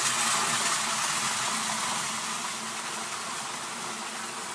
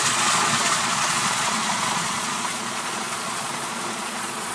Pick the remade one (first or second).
second